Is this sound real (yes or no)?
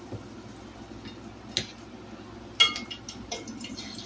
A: yes